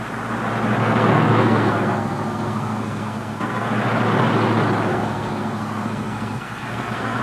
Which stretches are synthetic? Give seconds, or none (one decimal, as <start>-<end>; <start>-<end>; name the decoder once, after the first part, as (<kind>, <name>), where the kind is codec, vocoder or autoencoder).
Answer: 0.8-3.7 (codec, SNAC); 4.9-7.2